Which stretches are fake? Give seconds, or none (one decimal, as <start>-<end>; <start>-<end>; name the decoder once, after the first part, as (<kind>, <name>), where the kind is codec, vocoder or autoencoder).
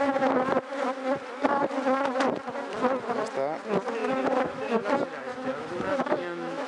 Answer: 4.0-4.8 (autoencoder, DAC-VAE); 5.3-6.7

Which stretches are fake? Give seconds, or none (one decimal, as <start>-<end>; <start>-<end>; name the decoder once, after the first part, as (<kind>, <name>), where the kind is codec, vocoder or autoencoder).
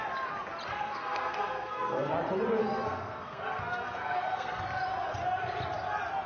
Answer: 0.7-2.1 (codec, SNAC); 2.6-4.6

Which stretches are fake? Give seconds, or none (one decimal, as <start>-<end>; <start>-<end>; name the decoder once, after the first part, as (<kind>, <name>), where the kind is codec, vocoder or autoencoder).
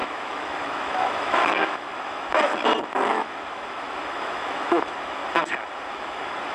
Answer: 0.0-2.5 (autoencoder, DAC-VAE); 3.1-5.2; 5.9-6.5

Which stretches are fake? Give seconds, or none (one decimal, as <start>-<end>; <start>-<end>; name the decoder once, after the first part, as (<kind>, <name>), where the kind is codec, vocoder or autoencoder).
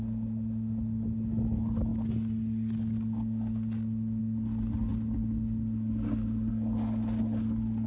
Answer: none